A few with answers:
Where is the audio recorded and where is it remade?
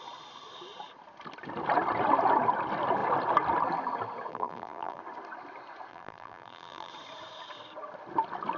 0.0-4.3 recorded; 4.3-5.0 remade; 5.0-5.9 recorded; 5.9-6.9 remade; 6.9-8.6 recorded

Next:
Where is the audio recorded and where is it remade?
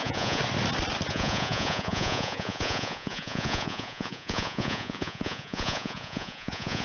0.0-0.4 remade; 0.4-1.1 recorded; 1.1-6.8 remade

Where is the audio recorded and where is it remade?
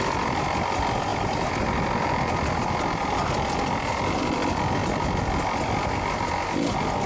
0.0-1.1 recorded; 1.1-3.0 remade; 3.0-7.1 recorded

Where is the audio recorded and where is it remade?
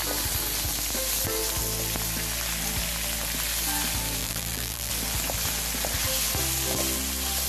0.0-4.2 recorded; 4.2-4.9 remade; 4.9-7.5 recorded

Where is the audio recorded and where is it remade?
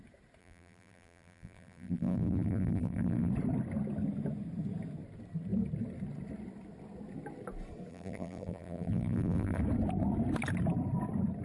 0.0-0.4 recorded; 0.4-3.3 remade; 3.3-7.9 recorded; 7.9-9.6 remade; 9.6-11.4 recorded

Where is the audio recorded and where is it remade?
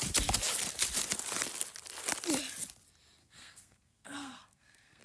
0.0-3.2 recorded; 3.2-5.0 remade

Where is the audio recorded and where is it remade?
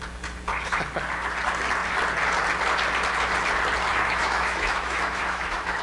0.0-3.9 recorded; 3.9-5.8 remade